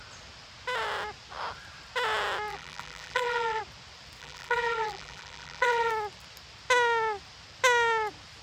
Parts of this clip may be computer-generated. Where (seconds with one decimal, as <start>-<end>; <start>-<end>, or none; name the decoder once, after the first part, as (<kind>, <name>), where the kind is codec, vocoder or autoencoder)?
2.5-3.6 (vocoder, BigVGAN v2); 4.2-5.9